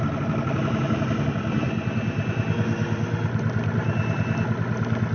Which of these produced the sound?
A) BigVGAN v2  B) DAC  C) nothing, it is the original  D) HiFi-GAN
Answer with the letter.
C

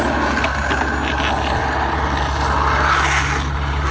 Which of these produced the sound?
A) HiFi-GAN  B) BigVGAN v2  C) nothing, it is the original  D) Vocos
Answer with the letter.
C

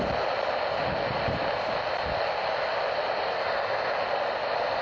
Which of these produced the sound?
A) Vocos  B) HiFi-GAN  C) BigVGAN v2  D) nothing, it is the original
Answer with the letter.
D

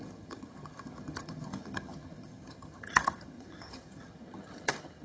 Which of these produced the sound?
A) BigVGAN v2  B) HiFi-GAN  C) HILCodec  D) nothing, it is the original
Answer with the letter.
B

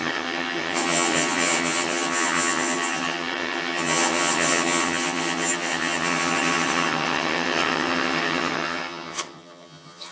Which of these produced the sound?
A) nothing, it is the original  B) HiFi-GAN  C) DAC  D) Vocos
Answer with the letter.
B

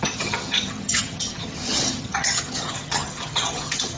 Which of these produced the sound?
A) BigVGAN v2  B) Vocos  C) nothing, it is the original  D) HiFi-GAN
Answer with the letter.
D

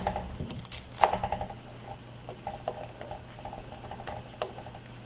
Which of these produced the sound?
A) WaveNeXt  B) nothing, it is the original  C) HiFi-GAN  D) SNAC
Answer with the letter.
B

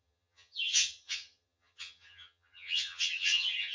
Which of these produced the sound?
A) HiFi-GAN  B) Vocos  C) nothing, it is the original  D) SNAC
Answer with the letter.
A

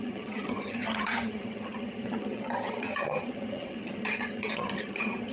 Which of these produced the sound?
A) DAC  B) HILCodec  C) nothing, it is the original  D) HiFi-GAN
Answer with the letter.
D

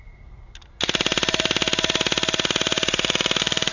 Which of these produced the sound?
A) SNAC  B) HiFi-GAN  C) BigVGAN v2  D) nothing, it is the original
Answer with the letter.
D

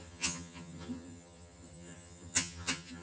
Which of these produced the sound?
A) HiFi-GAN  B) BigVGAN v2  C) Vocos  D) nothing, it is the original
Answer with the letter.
A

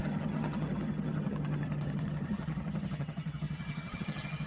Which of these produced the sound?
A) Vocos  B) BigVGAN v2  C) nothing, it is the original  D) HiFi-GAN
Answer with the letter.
D